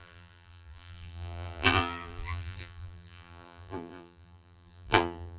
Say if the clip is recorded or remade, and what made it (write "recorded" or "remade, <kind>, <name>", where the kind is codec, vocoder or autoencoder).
remade, vocoder, BigVGAN v2